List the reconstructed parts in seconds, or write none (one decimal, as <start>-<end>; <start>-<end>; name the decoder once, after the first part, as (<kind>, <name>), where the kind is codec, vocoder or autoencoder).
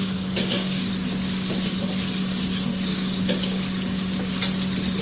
0.0-0.9 (codec, DAC); 2.9-3.6